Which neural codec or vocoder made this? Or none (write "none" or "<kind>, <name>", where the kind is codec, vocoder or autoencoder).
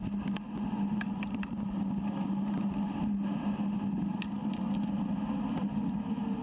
none